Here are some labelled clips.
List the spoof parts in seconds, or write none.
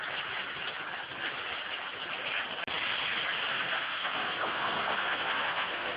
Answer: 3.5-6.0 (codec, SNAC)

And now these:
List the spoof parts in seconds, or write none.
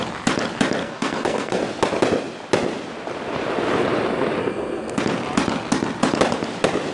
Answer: 0.8-1.6 (codec, SNAC); 4.4-5.0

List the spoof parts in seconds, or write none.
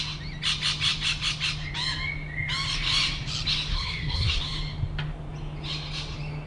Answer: 3.7-4.4 (codec, SNAC)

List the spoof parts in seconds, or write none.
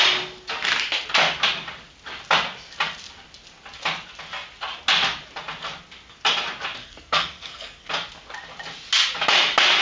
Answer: 6.8-7.9 (codec, SNAC)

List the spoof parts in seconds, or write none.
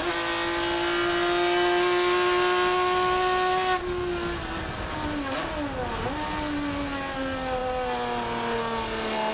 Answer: none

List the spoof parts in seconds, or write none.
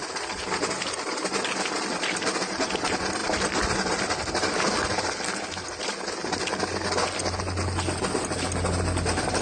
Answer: none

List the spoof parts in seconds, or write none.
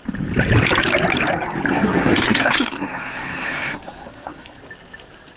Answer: 1.7-4.6 (codec, SNAC)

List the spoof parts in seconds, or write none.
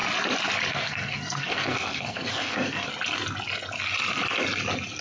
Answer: 0.7-2.9 (codec, SNAC)